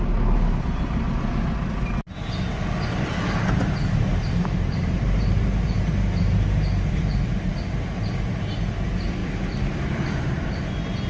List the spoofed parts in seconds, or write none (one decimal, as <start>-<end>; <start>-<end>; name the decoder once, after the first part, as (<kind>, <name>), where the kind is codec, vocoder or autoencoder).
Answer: 4.1-7.5 (vocoder, BigVGAN v2); 9.2-10.6